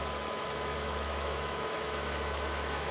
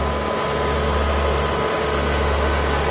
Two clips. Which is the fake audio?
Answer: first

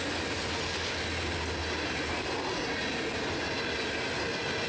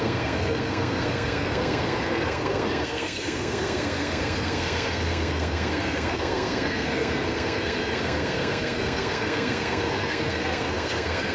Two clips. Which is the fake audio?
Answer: second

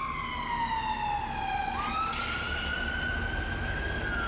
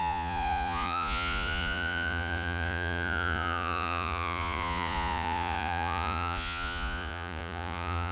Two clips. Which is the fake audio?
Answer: second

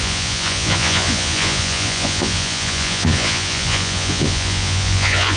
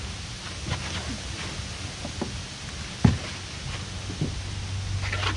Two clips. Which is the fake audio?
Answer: first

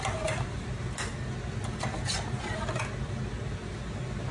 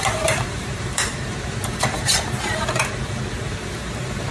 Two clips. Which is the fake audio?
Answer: second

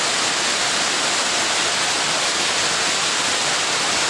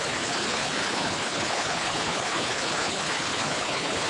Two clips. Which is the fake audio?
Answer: second